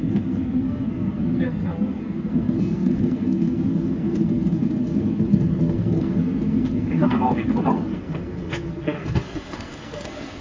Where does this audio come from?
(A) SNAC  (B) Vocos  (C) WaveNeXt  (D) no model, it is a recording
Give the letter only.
A